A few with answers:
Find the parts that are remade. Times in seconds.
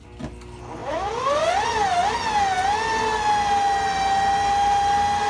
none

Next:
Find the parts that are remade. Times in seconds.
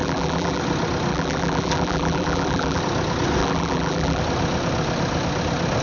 0.0-0.6 (vocoder, BigVGAN v2); 1.1-2.8; 3.4-4.2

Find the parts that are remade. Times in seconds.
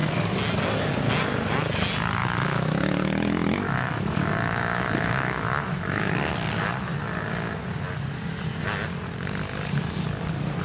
2.2-6.1 (autoencoder, DAC-VAE)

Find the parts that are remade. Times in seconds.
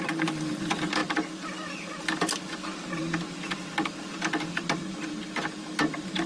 0.0-3.0 (vocoder, BigVGAN v2)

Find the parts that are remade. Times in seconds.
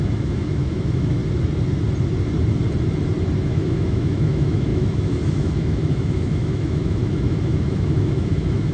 0.0-1.2 (autoencoder, DAC-VAE); 3.4-8.7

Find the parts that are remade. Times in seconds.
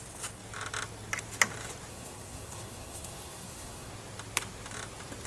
1.9-3.9 (codec, SNAC)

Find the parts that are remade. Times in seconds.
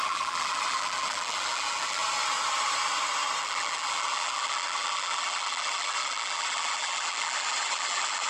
0.0-2.0 (vocoder, BigVGAN v2); 3.4-8.3